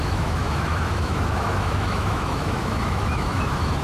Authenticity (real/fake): fake